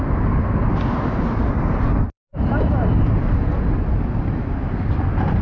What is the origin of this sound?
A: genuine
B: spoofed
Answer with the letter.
A